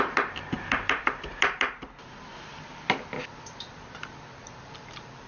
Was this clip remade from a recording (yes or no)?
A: yes